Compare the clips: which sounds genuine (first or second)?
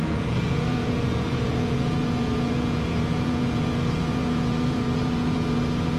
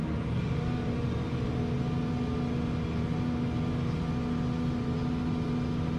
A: second